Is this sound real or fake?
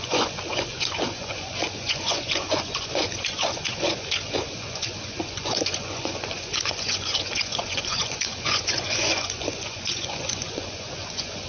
fake